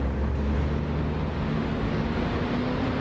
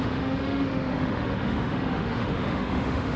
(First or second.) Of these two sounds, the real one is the first